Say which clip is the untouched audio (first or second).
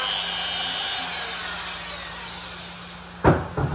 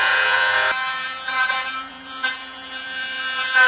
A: first